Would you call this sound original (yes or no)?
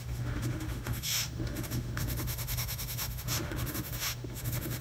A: no